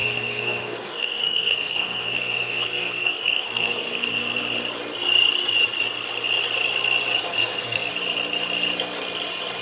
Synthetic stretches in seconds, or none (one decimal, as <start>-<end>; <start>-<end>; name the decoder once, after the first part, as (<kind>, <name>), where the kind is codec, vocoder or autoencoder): 0.0-4.4 (codec, SNAC); 7.3-7.9